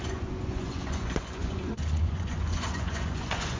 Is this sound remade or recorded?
remade